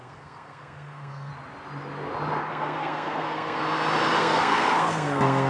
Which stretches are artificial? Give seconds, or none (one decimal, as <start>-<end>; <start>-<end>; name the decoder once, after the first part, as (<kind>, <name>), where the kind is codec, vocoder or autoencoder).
0.0-1.3 (codec, SNAC); 2.5-3.6; 4.2-5.5